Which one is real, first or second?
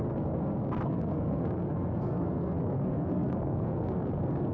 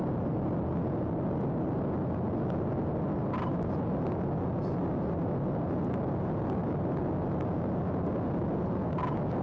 second